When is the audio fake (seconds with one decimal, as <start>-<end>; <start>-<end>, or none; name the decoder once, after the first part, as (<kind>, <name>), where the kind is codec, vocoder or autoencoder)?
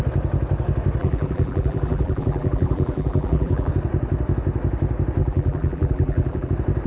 1.0-3.7 (vocoder, BigVGAN v2); 5.2-6.5